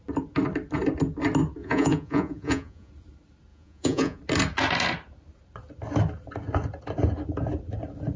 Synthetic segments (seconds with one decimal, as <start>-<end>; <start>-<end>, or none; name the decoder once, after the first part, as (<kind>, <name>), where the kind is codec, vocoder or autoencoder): 1.6-2.9 (vocoder, Vocos); 3.5-4.2